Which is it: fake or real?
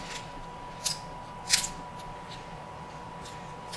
real